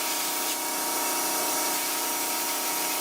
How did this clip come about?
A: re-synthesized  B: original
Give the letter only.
B